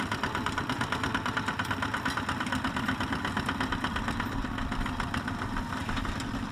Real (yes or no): no